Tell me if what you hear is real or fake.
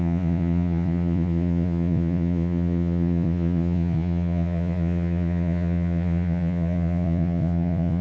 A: fake